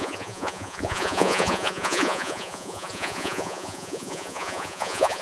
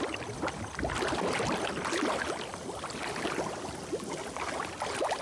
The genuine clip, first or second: second